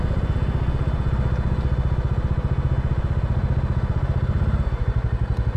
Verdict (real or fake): real